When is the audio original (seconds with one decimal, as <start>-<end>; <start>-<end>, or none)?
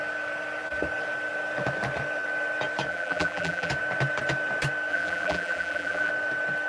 0.0-2.9; 3.7-4.9; 6.1-6.7